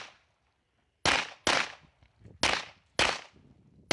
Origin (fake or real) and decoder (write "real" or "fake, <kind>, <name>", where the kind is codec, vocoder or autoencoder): real